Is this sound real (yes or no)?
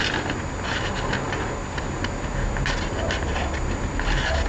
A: yes